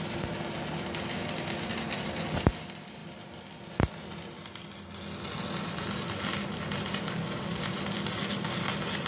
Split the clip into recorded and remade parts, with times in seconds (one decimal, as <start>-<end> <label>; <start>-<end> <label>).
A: 0.0-9.1 recorded